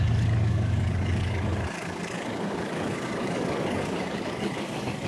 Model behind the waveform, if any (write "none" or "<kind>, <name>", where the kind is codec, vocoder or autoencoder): codec, DAC